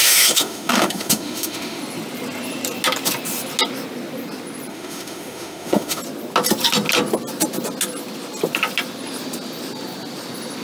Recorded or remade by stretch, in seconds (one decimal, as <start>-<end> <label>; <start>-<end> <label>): 0.0-1.8 remade; 1.8-4.7 recorded; 4.7-6.0 remade; 6.0-10.6 recorded